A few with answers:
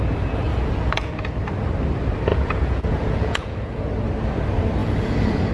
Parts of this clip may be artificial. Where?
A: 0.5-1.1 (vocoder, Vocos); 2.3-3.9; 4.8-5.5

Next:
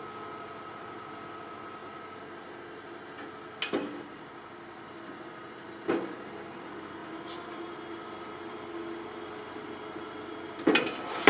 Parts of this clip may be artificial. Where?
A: none